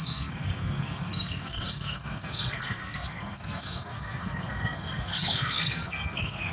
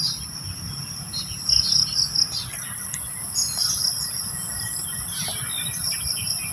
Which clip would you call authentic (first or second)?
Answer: second